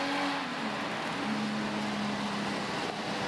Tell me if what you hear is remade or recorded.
recorded